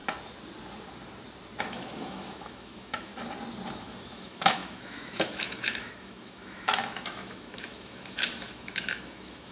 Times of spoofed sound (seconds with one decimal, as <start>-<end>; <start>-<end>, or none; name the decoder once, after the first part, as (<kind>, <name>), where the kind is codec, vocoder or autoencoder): 1.6-3.1 (autoencoder, DAC-VAE); 3.8-9.5

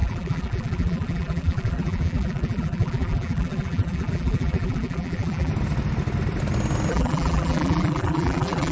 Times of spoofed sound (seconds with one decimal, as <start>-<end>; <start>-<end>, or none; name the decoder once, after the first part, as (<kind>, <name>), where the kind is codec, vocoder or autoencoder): 0.0-5.5 (vocoder, BigVGAN v2); 6.9-8.7

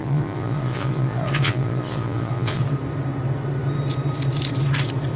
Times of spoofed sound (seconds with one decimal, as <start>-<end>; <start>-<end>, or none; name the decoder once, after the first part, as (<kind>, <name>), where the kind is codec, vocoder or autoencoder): 0.0-2.6 (vocoder, Vocos)

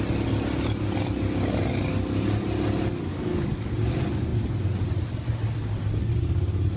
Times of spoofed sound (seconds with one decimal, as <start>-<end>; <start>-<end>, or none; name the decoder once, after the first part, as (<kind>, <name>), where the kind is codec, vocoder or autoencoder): 3.1-3.7 (codec, DAC)

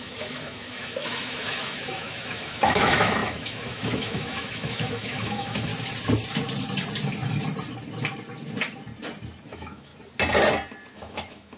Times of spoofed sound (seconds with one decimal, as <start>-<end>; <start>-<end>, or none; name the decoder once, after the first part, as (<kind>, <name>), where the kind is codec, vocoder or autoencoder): 0.0-5.7 (autoencoder, DAC-VAE); 9.5-9.9; 10.9-11.6